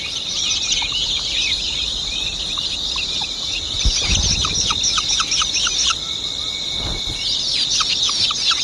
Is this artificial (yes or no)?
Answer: no